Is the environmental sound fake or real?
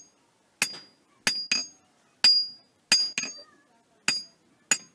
real